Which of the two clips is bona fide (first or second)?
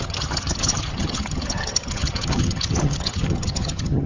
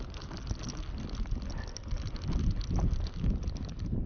second